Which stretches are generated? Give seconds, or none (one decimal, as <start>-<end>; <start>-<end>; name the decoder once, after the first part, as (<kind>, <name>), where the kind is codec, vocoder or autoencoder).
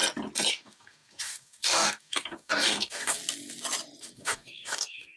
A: 0.5-3.2 (codec, DAC); 4.0-5.2